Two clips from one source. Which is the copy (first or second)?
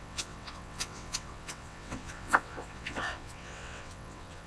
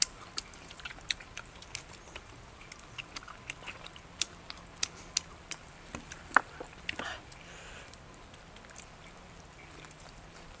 first